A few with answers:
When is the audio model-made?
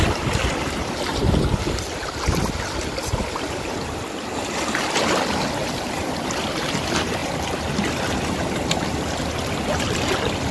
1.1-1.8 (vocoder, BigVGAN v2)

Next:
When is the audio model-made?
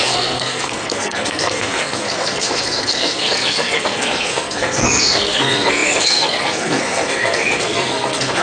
0.0-8.4 (codec, SNAC)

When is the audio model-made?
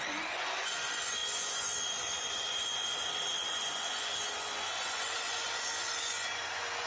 0.0-6.9 (vocoder, Vocos)